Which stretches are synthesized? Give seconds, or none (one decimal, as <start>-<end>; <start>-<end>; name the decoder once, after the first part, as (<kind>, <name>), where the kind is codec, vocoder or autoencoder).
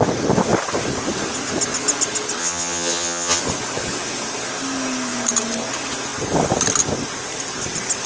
2.4-3.4 (vocoder, HiFi-GAN)